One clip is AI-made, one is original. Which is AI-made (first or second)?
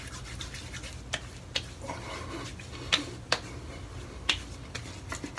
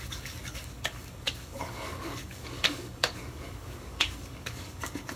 second